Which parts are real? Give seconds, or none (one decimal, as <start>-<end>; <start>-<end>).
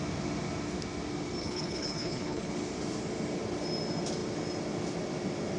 0.0-1.4; 2.5-5.6